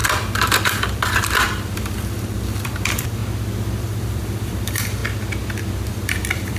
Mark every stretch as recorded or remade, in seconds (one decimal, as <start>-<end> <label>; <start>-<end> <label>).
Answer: 0.0-3.2 remade; 3.2-3.8 recorded; 3.8-5.0 remade; 5.0-5.9 recorded; 5.9-6.6 remade